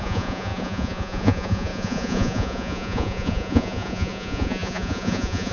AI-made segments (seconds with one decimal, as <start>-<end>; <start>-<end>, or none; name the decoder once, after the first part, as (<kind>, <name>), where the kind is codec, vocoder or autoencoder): 0.0-5.5 (vocoder, Vocos)

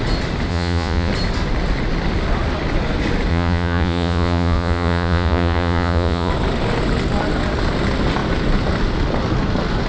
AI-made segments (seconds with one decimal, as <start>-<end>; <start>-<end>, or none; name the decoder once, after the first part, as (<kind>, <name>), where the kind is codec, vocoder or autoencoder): 0.5-1.1 (vocoder, Vocos); 3.3-6.3

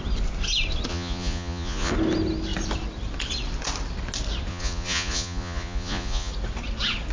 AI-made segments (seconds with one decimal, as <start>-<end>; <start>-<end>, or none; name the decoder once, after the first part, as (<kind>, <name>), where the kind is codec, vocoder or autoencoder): 0.9-1.9 (vocoder, Vocos); 4.5-6.3

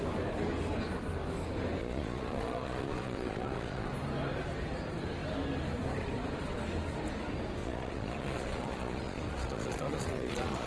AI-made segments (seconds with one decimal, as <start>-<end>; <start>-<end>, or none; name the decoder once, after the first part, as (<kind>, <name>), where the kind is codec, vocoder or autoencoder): 1.8-3.9 (vocoder, Vocos); 7.6-10.7

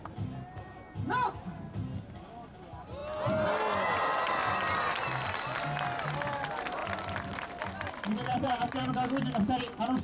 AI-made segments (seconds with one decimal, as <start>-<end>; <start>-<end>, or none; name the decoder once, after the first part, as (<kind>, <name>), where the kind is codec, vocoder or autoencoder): 8.3-8.9 (vocoder, Vocos)